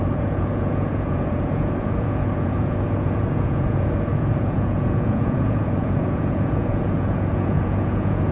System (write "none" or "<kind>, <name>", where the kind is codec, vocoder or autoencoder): vocoder, Vocos